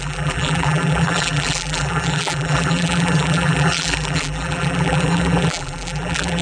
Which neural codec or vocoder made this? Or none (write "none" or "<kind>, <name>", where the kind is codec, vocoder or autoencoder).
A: vocoder, BigVGAN v2